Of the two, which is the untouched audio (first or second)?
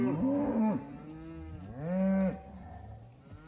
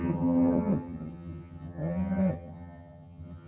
first